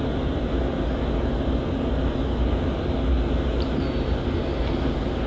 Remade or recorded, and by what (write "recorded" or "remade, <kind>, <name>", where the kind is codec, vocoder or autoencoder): recorded